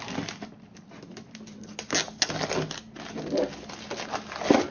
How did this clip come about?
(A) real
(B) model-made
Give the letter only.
A